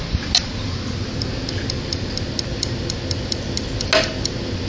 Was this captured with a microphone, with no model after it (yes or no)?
yes